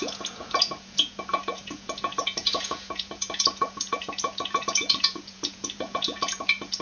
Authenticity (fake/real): fake